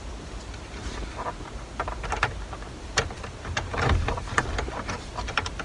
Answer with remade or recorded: recorded